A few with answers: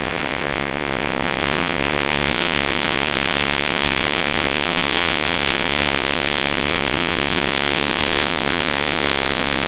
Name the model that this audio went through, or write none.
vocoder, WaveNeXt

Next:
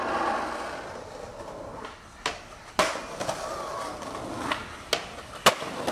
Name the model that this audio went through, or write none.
none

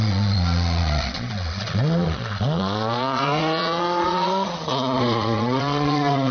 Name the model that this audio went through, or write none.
vocoder, Vocos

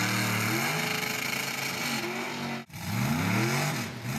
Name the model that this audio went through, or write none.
none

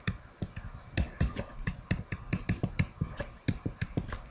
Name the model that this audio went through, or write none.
none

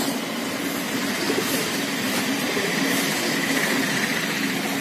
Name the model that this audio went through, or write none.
none